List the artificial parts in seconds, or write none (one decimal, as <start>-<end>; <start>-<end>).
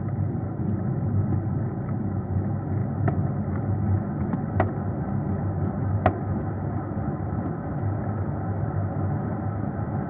none